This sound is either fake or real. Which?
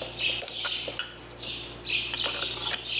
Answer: real